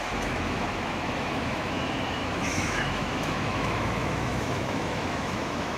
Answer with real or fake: fake